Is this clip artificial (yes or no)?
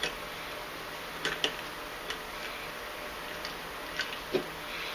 no